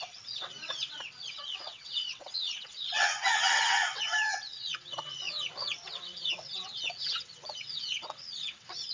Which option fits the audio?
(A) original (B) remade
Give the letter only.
B